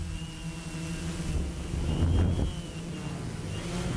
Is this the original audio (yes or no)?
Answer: yes